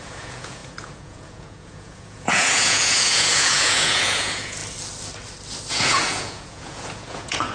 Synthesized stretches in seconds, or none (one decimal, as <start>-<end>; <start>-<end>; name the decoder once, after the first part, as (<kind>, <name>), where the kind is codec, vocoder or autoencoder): 0.0-4.6 (vocoder, Vocos); 5.7-7.5